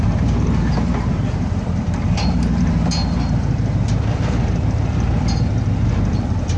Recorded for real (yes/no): yes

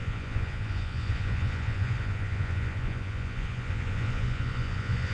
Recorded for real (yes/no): no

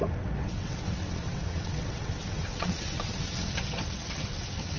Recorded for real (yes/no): no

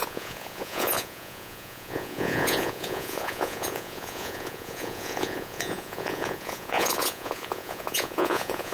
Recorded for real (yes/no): no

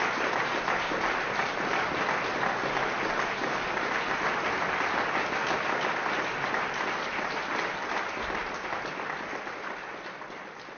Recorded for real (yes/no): yes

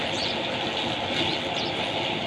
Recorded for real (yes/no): yes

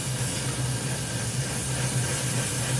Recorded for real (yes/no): yes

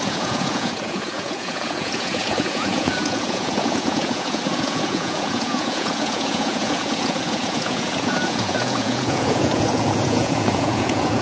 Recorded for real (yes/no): no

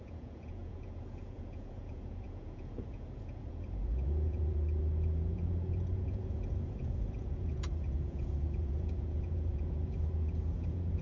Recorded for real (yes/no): no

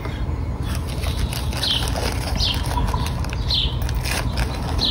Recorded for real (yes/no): yes